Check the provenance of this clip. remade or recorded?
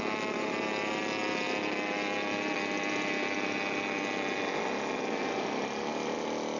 recorded